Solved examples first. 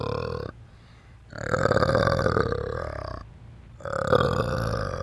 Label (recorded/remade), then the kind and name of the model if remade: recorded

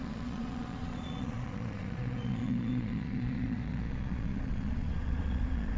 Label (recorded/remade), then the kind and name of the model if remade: remade, vocoder, Vocos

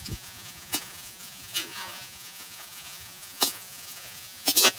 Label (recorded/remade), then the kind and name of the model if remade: remade, vocoder, Vocos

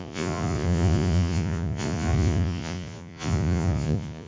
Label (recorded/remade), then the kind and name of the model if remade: remade, vocoder, Vocos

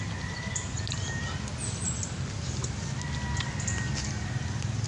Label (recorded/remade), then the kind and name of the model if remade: recorded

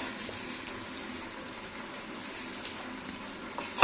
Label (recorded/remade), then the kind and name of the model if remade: recorded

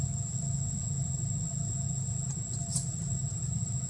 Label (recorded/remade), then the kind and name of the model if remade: recorded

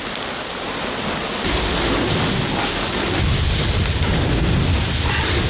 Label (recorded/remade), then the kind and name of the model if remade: recorded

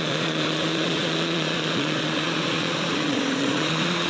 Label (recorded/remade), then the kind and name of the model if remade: remade, vocoder, Vocos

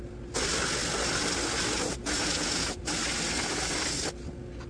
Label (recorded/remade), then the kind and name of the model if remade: recorded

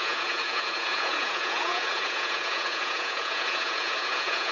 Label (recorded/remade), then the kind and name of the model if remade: remade, vocoder, Vocos